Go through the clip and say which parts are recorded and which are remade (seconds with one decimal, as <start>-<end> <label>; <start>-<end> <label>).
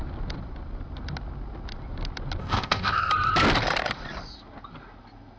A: 0.0-2.4 recorded; 2.4-3.1 remade; 3.1-5.4 recorded